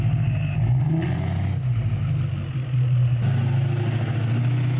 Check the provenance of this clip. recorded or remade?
recorded